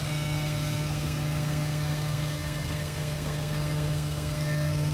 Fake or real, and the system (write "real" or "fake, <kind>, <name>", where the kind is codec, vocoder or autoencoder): fake, codec, SNAC